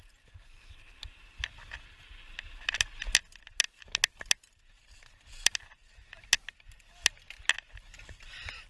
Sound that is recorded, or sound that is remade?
recorded